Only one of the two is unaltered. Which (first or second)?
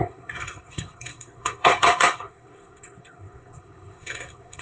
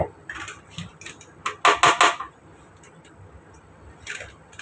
second